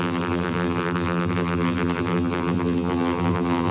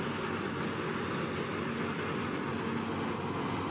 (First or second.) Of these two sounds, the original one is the second